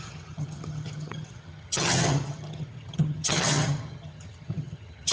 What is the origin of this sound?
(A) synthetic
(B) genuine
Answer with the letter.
A